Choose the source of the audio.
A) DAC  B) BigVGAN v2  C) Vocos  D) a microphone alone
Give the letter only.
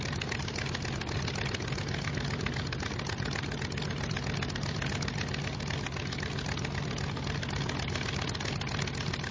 D